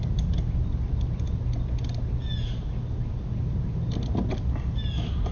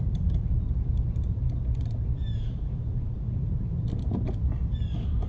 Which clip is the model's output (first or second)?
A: second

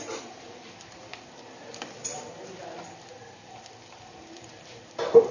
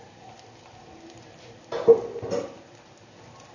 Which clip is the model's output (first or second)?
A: first